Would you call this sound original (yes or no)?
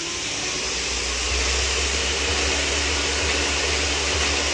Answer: yes